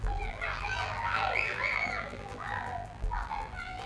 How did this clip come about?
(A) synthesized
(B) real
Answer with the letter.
A